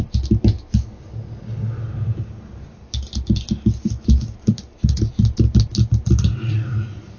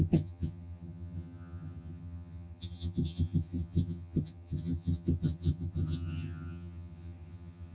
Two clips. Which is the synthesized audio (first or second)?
second